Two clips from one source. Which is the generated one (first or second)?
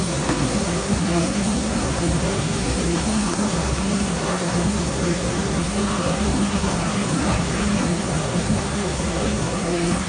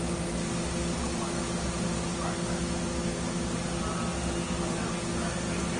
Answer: first